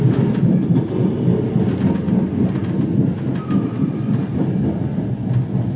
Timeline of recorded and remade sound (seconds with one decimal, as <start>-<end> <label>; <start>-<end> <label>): 0.0-5.8 recorded